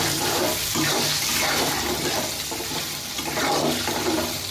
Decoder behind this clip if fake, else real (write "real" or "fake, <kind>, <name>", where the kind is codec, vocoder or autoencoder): real